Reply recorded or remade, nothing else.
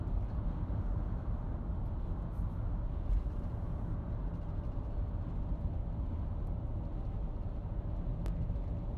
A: recorded